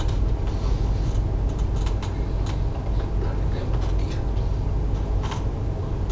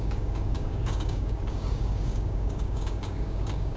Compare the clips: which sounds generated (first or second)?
second